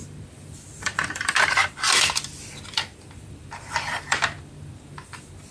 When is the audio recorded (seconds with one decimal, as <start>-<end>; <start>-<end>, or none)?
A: none